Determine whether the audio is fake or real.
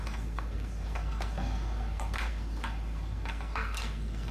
fake